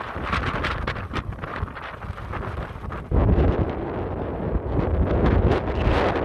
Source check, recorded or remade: recorded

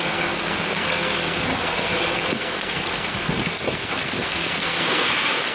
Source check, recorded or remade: remade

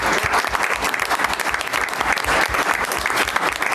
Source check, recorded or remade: recorded